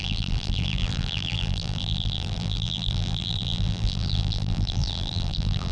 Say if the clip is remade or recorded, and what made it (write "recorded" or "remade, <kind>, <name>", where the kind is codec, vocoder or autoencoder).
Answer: remade, vocoder, BigVGAN v2